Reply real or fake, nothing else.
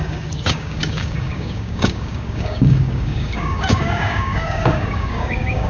fake